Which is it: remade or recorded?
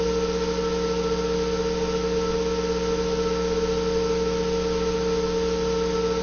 recorded